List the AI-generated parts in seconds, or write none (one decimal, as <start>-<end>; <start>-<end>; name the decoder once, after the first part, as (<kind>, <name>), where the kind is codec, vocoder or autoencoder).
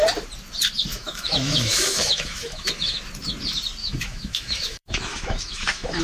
0.9-3.0 (autoencoder, DAC-VAE); 3.8-6.0